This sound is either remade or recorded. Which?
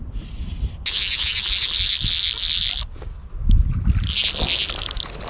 recorded